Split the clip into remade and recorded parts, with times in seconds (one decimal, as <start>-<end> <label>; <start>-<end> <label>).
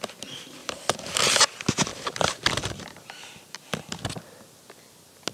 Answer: 0.0-0.6 recorded; 0.6-1.3 remade; 1.3-1.9 recorded; 1.9-3.1 remade; 3.1-5.3 recorded